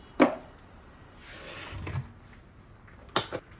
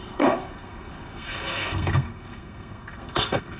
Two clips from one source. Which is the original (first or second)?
first